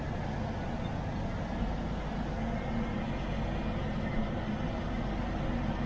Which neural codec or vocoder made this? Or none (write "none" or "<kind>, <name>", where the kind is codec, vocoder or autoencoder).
none